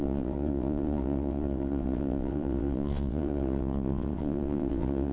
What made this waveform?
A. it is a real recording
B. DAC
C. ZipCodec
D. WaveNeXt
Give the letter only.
D